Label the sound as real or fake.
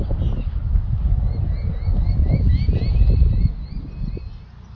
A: real